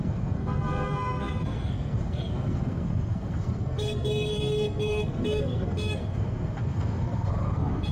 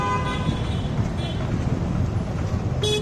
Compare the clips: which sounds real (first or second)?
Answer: second